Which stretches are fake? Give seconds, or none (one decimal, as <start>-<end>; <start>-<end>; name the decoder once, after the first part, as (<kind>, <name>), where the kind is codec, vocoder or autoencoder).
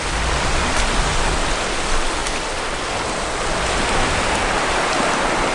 none